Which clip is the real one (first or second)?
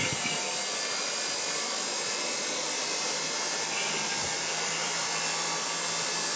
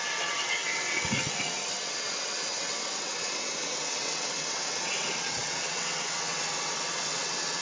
first